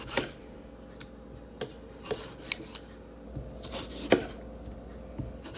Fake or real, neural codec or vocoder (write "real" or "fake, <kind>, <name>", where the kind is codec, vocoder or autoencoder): real